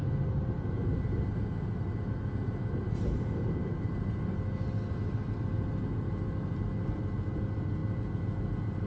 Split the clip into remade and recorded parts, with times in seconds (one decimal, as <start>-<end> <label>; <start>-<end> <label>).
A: 0.0-8.9 recorded